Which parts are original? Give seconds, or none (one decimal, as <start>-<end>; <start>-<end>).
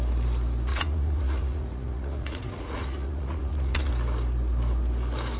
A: 0.0-0.7; 3.9-5.4